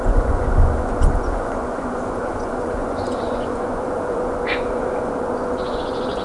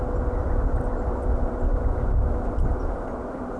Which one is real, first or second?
second